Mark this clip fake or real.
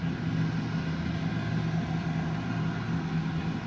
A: real